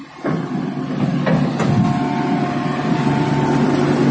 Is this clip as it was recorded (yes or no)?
yes